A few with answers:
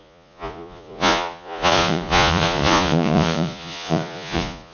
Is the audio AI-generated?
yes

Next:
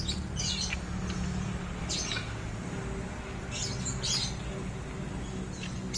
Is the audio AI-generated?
no